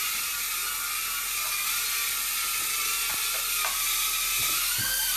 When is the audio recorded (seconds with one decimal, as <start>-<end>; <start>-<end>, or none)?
0.0-5.2